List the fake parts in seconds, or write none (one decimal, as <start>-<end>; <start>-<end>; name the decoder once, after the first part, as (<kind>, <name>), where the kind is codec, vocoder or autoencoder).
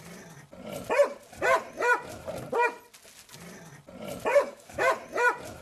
4.3-4.9 (codec, DAC)